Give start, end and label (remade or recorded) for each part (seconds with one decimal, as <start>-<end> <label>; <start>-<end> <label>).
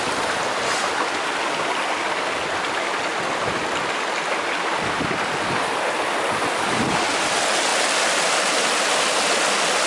0.0-9.9 recorded